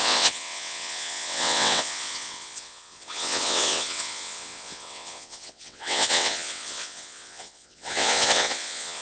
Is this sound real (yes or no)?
no